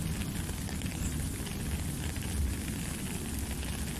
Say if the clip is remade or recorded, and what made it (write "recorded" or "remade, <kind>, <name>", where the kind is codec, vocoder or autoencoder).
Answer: recorded